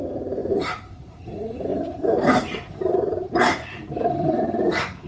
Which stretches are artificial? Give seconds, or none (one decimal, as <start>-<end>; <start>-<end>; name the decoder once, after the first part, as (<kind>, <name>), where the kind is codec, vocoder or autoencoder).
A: 0.4-1.2 (vocoder, BigVGAN v2); 1.7-5.1